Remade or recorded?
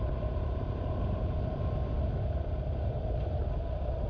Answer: recorded